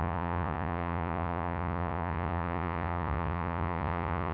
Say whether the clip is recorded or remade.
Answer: remade